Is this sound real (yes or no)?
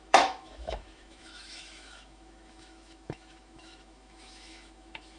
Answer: no